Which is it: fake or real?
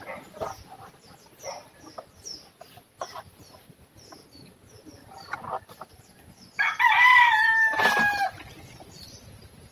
real